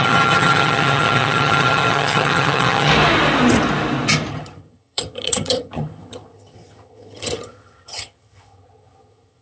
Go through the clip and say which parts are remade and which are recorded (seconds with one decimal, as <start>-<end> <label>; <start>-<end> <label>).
0.0-2.9 remade; 2.9-4.3 recorded; 4.3-9.4 remade